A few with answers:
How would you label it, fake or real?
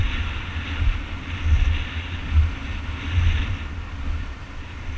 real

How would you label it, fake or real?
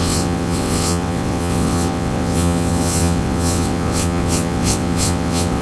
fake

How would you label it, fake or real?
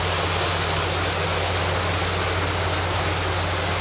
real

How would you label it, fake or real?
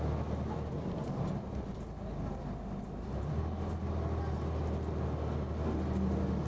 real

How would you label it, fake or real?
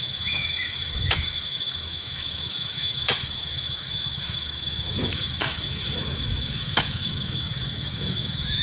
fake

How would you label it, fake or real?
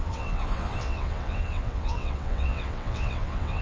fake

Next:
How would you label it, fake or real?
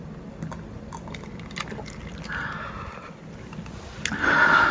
real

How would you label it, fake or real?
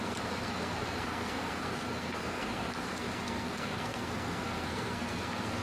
fake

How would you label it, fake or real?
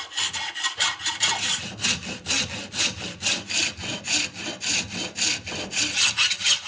real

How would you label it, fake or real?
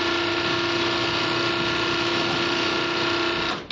real